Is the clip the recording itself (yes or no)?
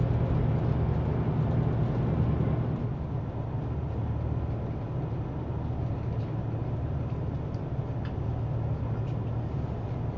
yes